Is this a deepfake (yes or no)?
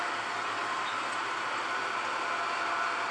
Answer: no